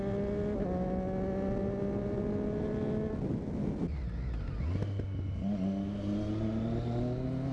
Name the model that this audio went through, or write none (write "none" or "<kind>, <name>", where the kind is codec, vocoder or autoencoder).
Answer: none